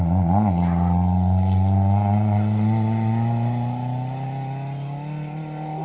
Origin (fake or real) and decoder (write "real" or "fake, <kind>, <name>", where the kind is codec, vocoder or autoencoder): real